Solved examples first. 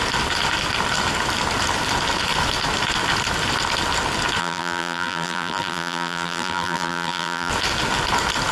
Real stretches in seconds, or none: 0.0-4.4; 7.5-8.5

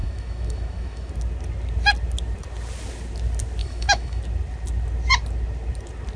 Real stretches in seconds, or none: 1.1-3.6; 4.2-6.2

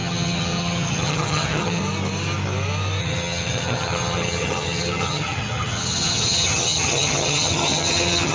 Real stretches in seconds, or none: 1.8-3.0

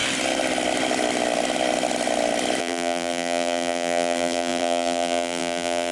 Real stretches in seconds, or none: 0.0-2.6

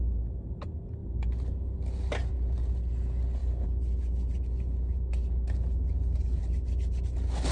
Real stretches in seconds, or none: 0.0-7.5

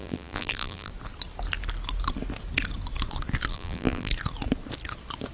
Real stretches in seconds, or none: 0.9-3.5; 4.1-5.3

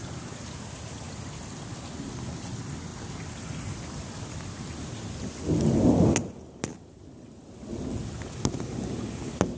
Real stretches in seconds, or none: 0.0-9.6